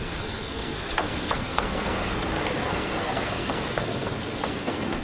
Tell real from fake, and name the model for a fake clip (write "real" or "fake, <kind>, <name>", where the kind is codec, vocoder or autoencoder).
fake, codec, SNAC